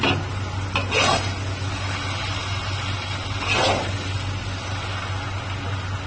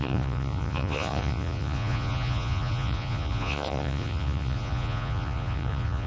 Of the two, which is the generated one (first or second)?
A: second